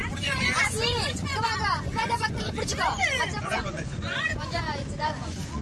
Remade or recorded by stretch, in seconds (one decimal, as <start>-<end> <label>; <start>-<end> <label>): 0.0-5.6 remade